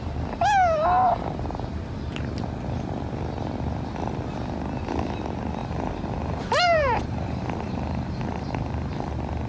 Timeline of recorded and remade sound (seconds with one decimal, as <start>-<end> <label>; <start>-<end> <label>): 0.0-5.6 recorded; 5.6-9.1 remade; 9.1-9.5 recorded